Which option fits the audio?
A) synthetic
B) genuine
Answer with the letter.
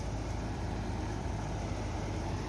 A